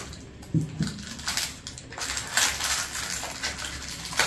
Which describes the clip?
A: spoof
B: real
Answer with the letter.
B